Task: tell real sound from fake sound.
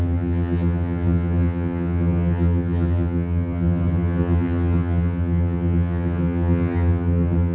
fake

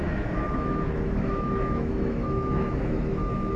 fake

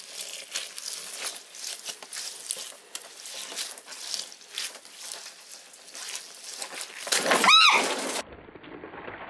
real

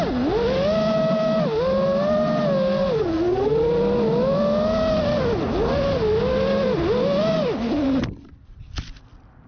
real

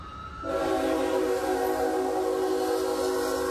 real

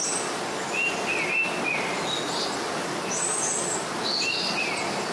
real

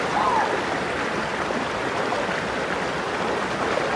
real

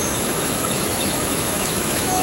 fake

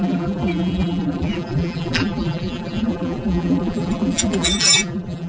fake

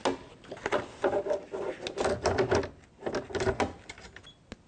real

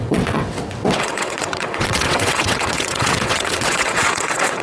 fake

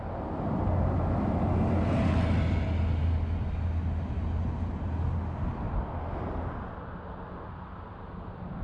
real